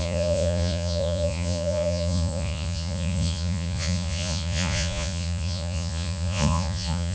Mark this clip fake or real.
fake